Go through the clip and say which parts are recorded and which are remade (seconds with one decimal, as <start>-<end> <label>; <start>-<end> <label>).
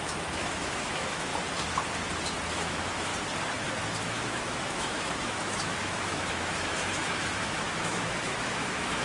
0.0-1.3 remade; 1.3-2.5 recorded; 2.5-3.1 remade; 3.1-4.0 recorded; 4.0-9.0 remade